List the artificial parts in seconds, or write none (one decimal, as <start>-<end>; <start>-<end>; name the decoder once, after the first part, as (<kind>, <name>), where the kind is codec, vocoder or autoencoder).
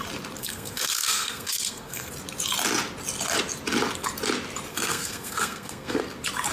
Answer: 0.4-2.1 (codec, SNAC); 4.7-6.0